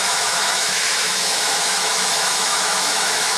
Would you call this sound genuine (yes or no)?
no